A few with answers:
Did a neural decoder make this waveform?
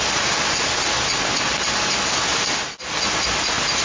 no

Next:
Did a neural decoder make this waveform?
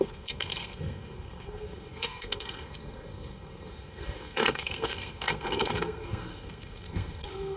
yes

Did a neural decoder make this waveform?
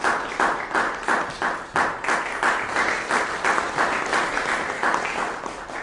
no